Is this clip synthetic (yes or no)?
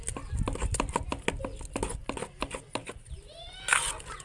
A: no